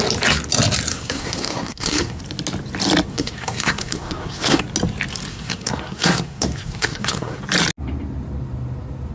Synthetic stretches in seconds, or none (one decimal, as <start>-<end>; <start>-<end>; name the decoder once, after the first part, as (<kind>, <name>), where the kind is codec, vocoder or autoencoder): 0.9-2.2 (codec, SNAC); 3.1-4.6; 5.3-7.4